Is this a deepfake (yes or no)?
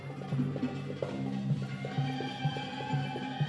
no